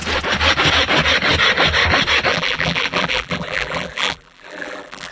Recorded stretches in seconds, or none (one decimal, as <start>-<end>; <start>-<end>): 0.0-2.3